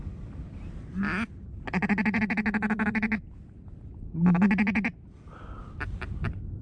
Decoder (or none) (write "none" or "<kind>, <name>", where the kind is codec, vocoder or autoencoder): none